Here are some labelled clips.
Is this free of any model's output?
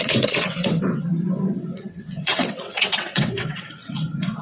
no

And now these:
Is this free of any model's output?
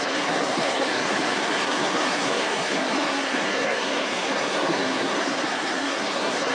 no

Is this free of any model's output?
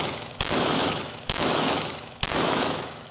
no